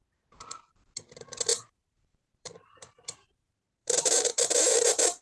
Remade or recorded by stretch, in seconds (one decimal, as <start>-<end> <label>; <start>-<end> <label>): 0.0-1.5 recorded; 1.5-3.9 remade; 3.9-5.2 recorded